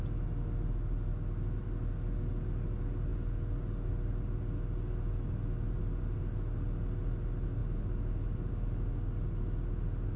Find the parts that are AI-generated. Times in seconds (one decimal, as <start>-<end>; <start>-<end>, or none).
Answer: 7.6-8.5